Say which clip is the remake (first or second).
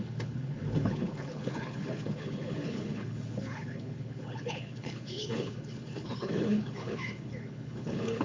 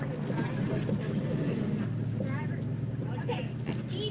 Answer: first